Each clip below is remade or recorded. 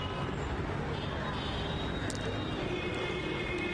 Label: recorded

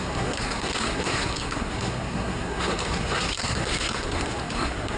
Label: remade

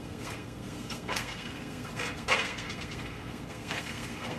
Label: remade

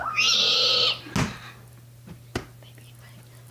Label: recorded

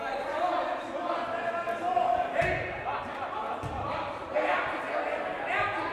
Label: recorded